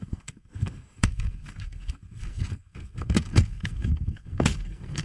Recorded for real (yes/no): no